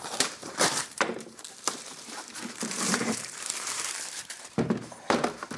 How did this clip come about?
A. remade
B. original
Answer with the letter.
A